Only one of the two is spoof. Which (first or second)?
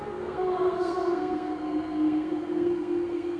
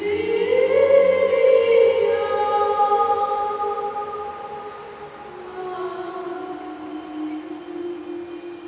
first